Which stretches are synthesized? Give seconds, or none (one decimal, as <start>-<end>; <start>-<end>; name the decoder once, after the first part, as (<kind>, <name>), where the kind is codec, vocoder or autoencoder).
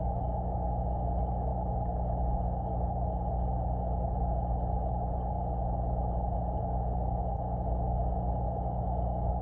0.0-1.5 (autoencoder, DAC-VAE); 6.6-9.4